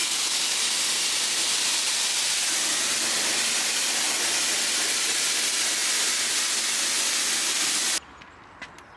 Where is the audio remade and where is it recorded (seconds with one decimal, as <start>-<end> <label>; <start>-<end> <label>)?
0.0-0.6 remade; 0.6-9.0 recorded